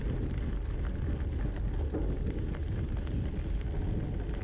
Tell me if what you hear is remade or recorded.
recorded